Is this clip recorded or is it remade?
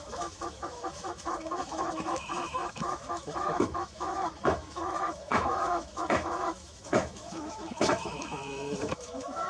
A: remade